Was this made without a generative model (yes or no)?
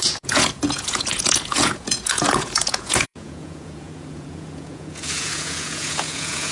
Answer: no